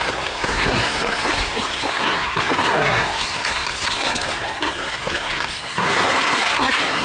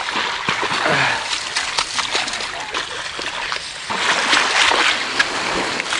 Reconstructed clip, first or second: first